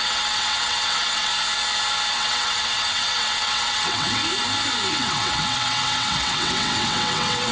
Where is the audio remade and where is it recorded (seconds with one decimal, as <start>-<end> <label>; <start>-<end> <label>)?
0.0-1.3 remade; 1.3-2.1 recorded; 2.1-4.2 remade; 4.2-4.9 recorded; 4.9-7.5 remade